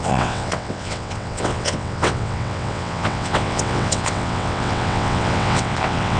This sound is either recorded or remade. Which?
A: remade